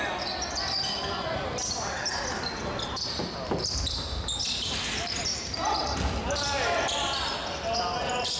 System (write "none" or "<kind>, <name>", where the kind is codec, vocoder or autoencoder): none